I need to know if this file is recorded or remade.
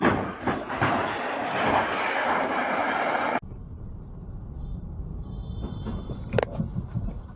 remade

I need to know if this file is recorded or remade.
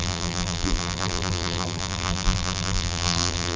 remade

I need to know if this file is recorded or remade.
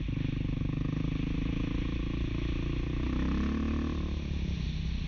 recorded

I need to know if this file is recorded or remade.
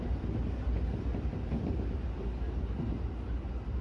recorded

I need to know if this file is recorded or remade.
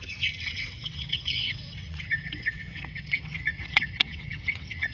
remade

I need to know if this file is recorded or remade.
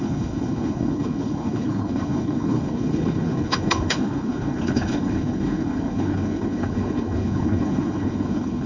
remade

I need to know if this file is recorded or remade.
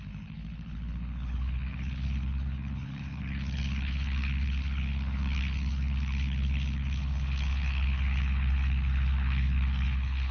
remade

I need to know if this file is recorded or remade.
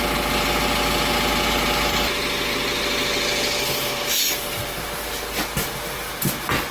recorded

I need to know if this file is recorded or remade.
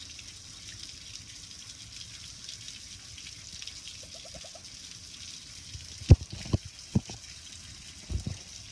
recorded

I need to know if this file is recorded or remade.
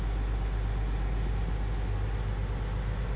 recorded